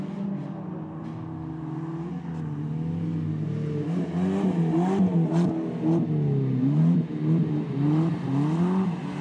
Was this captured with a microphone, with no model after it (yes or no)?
yes